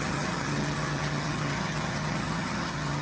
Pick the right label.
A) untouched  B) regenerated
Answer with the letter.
B